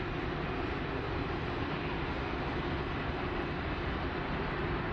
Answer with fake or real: real